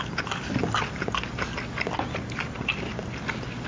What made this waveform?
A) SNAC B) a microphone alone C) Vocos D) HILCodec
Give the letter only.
B